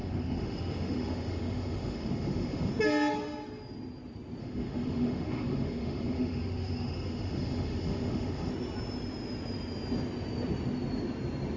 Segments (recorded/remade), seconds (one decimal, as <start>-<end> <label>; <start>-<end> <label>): 0.0-2.7 remade; 2.7-4.4 recorded; 4.4-8.5 remade; 8.5-11.6 recorded